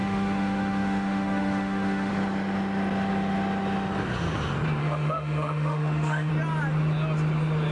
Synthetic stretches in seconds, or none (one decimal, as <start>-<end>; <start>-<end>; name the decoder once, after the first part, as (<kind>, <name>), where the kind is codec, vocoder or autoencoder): 0.0-2.1 (autoencoder, DAC-VAE); 4.8-6.3